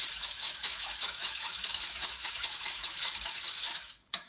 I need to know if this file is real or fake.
fake